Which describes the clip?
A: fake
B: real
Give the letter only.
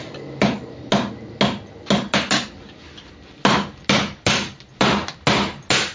B